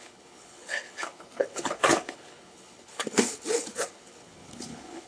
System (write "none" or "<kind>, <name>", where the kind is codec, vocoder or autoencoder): codec, HILCodec